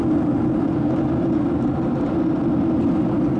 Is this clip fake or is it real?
real